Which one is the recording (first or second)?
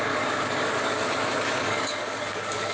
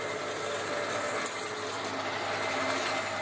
second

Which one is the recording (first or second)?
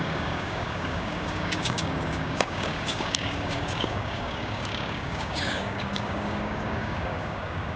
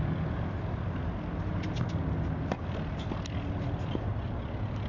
second